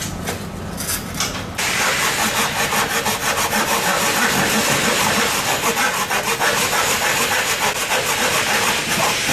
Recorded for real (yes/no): yes